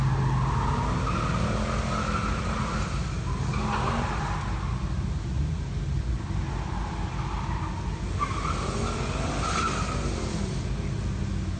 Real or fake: real